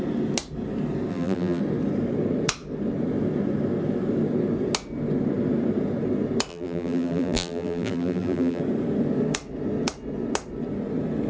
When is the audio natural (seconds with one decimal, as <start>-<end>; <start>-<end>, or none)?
0.0-1.1; 1.6-6.5; 8.6-11.3

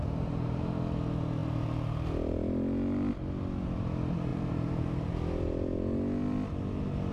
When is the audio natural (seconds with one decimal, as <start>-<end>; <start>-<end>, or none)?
0.0-4.3; 5.1-7.1